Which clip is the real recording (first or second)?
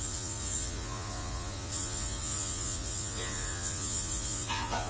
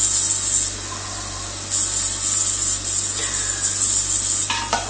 second